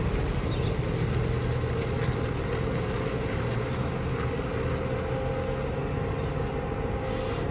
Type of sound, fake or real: real